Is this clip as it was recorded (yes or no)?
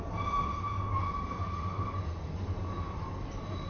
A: yes